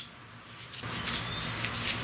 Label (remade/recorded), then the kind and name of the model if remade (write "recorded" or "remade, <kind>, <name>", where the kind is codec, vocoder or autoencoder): recorded